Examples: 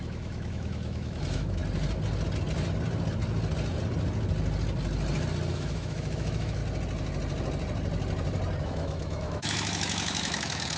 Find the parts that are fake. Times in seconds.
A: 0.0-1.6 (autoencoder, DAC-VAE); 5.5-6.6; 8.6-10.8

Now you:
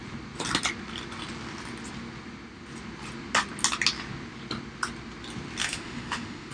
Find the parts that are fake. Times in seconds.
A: 5.6-6.5 (autoencoder, DAC-VAE)